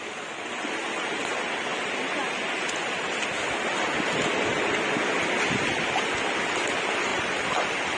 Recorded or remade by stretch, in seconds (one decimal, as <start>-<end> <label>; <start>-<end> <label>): 0.0-7.1 recorded; 7.1-8.0 remade